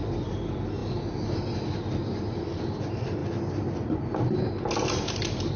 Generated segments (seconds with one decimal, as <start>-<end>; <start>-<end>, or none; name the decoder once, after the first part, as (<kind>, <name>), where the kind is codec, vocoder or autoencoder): none